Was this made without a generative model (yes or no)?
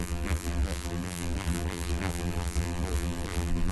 no